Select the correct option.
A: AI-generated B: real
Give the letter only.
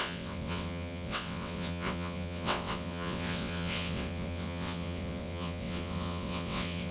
A